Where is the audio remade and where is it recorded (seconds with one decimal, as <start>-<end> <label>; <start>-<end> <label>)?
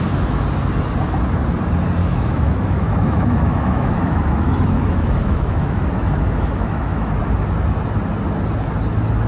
0.0-2.0 recorded; 2.0-7.2 remade; 7.2-9.3 recorded